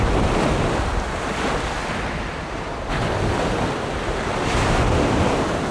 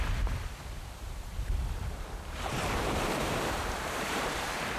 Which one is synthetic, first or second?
second